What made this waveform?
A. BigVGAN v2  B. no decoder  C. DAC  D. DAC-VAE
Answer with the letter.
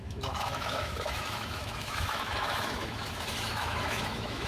D